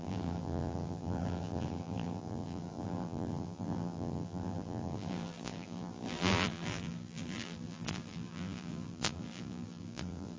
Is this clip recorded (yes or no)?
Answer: no